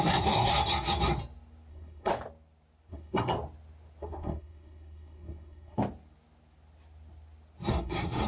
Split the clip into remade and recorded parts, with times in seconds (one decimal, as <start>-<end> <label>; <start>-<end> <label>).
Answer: 0.0-0.5 remade; 0.5-1.7 recorded; 1.7-2.1 remade; 2.1-2.9 recorded; 2.9-3.3 remade; 3.3-4.0 recorded; 4.0-5.8 remade; 5.8-7.7 recorded; 7.7-8.3 remade